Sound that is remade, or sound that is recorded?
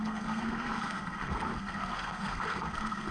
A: remade